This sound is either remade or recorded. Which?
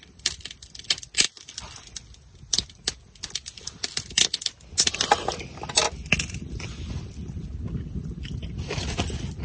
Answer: recorded